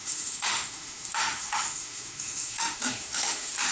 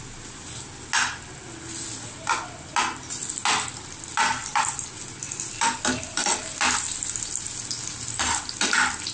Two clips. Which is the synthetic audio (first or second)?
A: first